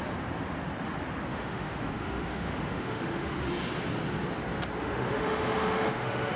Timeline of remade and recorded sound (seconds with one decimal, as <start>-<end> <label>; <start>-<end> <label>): 0.0-1.3 recorded; 1.3-3.5 remade; 3.5-4.8 recorded; 4.8-6.4 remade